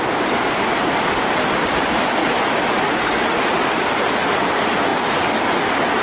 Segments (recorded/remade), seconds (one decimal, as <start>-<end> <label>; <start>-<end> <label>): 0.0-2.2 recorded; 2.2-3.6 remade; 3.6-6.0 recorded

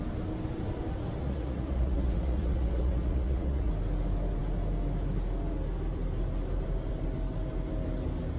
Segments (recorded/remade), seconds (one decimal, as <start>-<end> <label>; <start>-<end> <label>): 0.0-1.2 recorded; 1.2-3.7 remade; 3.7-8.4 recorded